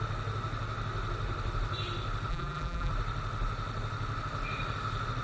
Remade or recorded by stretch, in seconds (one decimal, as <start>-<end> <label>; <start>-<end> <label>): 0.0-2.3 recorded; 2.3-2.9 remade; 2.9-5.2 recorded